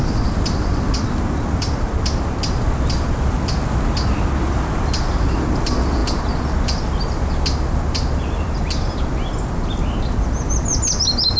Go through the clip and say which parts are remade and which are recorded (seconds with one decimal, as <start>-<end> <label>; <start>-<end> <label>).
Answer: 0.0-11.4 recorded